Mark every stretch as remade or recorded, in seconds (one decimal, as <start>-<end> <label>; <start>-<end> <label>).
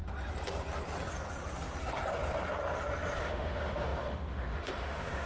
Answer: 0.0-3.2 recorded; 3.2-5.3 remade